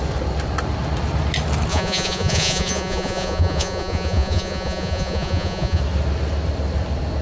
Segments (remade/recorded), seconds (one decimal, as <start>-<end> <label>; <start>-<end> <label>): 0.0-1.7 recorded; 1.7-5.8 remade; 5.8-7.2 recorded